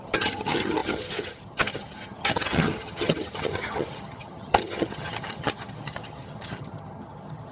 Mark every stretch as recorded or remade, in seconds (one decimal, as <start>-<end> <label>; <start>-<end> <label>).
0.0-7.5 remade